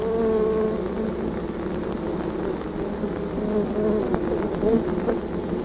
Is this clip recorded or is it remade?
recorded